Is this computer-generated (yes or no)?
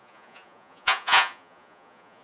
yes